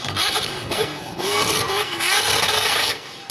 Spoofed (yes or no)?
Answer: yes